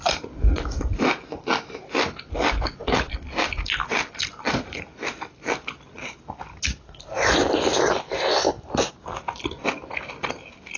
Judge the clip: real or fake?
real